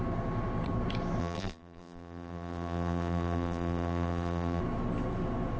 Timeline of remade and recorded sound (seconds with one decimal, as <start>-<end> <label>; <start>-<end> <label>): 0.0-1.2 recorded; 1.2-4.6 remade; 4.6-5.6 recorded